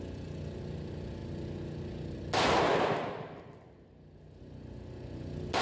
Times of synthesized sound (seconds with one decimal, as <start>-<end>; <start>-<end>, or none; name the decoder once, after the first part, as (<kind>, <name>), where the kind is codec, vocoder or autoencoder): none